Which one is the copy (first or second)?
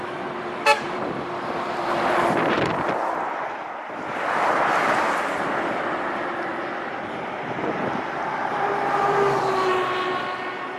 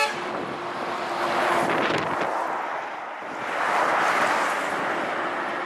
first